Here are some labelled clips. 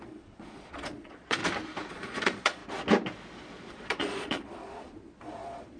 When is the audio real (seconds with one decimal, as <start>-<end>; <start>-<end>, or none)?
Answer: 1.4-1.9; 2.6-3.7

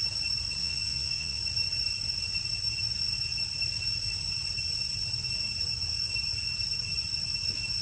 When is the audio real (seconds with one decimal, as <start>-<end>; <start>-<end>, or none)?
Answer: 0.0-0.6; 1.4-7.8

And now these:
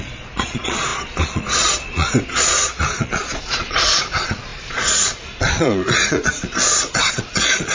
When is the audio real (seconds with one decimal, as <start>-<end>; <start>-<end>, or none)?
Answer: none